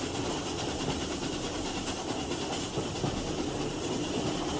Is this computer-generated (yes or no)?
no